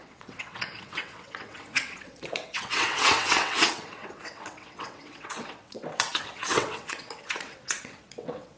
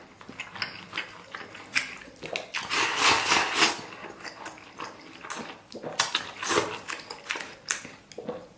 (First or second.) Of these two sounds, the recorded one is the second